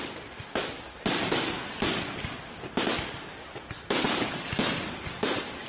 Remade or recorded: recorded